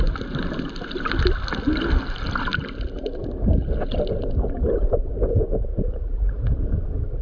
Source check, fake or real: real